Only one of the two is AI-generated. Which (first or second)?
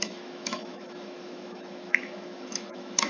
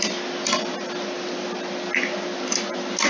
first